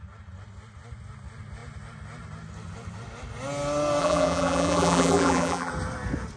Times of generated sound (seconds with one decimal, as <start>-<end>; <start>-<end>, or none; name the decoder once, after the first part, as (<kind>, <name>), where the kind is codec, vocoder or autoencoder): 4.0-5.7 (vocoder, BigVGAN v2)